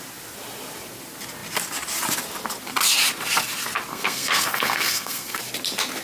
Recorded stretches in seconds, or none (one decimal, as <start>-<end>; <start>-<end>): 0.0-3.9; 5.4-6.0